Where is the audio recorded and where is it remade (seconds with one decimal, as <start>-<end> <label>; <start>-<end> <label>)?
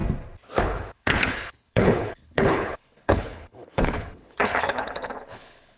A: 0.0-0.6 recorded; 0.6-5.8 remade